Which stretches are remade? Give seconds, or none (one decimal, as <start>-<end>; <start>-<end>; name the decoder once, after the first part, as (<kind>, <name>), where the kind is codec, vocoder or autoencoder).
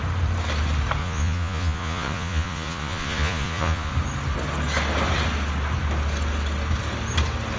1.0-3.9 (vocoder, Vocos)